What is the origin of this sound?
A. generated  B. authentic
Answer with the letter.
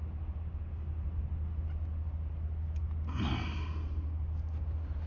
B